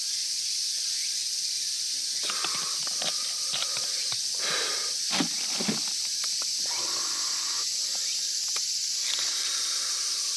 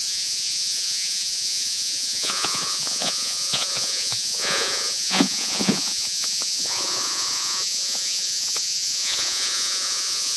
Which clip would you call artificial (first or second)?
second